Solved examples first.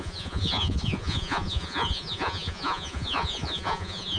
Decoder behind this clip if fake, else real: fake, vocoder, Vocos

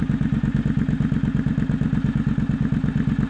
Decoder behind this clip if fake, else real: real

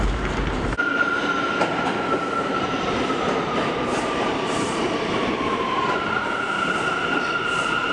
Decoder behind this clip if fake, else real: fake, vocoder, BigVGAN v2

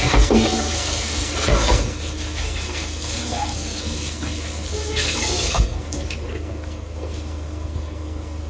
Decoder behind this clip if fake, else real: fake, codec, SNAC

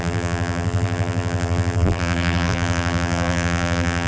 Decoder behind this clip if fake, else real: fake, vocoder, BigVGAN v2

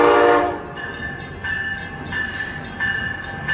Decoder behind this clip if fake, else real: real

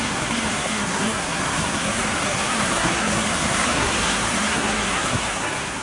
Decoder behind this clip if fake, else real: fake, codec, SNAC